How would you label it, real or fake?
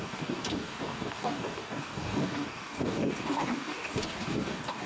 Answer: fake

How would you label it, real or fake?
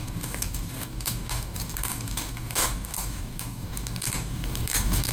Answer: fake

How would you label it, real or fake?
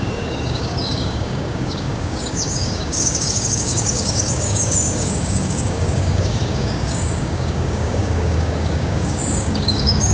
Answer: fake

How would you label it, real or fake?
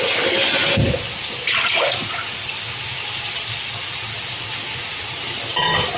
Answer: real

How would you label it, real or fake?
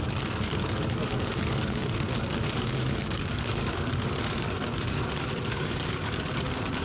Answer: fake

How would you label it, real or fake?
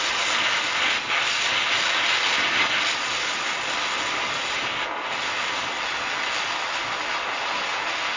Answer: real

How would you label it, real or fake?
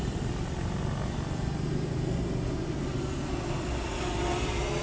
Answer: real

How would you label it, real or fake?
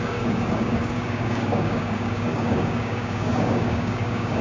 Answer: fake